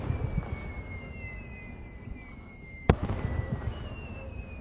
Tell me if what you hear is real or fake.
real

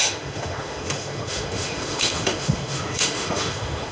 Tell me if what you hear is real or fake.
fake